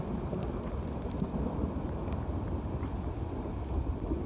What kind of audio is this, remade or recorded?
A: recorded